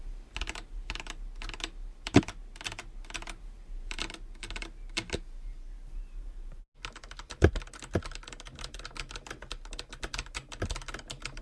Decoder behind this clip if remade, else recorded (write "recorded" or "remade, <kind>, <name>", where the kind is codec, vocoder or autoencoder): recorded